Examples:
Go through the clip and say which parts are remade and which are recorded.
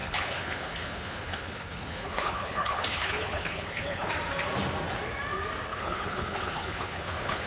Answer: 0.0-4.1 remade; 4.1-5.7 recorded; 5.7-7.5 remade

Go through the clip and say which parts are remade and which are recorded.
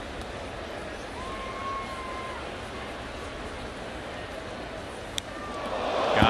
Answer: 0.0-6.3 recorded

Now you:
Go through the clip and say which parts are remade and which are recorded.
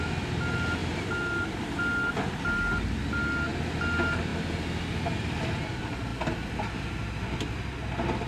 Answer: 0.0-8.3 recorded